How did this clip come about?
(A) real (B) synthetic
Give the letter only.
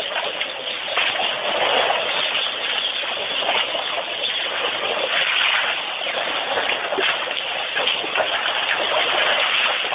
A